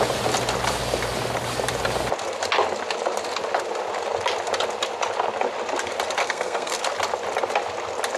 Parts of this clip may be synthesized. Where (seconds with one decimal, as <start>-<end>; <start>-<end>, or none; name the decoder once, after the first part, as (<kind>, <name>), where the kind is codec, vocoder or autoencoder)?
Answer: 6.2-6.8 (codec, SNAC)